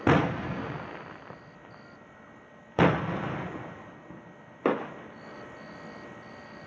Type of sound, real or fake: real